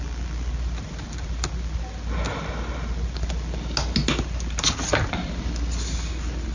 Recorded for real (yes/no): yes